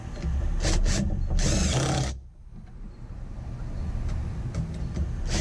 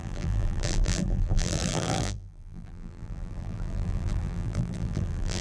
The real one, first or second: first